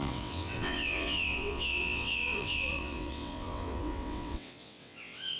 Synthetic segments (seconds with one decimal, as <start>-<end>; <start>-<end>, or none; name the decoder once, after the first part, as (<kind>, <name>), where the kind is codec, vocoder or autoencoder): 0.0-5.4 (vocoder, WaveNeXt)